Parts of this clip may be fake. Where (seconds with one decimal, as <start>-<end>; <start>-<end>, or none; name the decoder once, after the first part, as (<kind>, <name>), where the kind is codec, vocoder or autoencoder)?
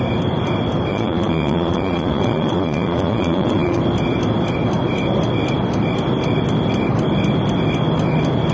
0.9-3.8 (vocoder, Vocos)